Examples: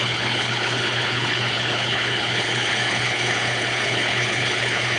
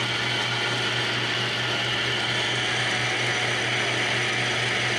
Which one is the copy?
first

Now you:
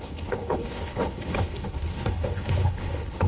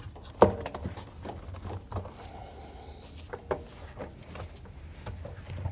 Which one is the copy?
first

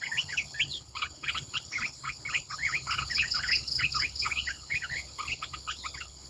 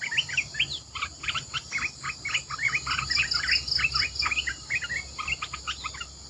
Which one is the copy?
first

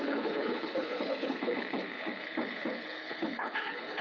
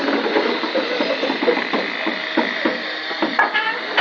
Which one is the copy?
first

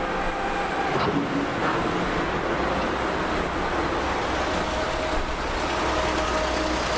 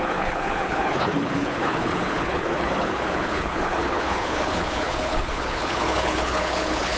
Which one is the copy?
second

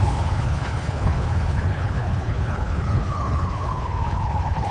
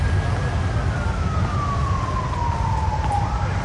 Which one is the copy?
first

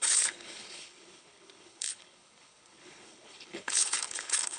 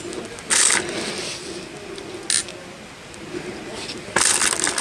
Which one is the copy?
first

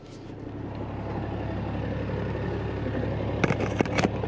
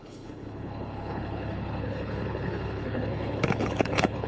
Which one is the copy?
second